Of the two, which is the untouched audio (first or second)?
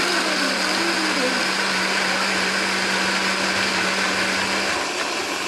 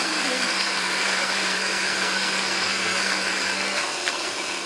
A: first